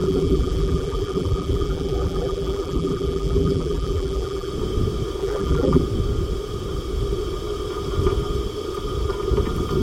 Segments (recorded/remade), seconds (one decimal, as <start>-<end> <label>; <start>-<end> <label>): 0.0-4.5 remade; 4.5-5.2 recorded; 5.2-5.8 remade; 5.8-9.8 recorded